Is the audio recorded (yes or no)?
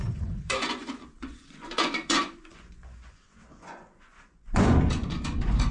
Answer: no